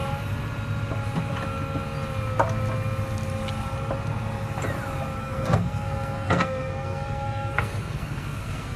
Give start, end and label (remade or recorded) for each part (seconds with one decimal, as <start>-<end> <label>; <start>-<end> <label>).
0.0-5.2 recorded; 5.2-8.8 remade